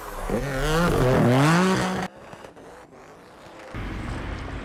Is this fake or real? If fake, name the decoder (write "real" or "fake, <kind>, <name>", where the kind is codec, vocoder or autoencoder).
real